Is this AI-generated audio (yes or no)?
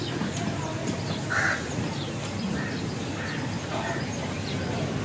no